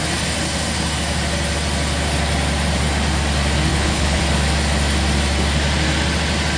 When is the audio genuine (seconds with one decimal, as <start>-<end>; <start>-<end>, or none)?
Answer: 0.0-3.7; 4.2-6.6